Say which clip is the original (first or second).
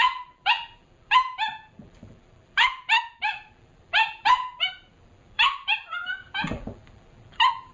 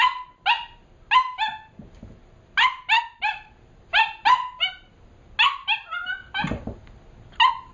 second